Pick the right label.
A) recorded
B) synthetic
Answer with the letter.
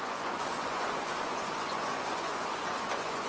B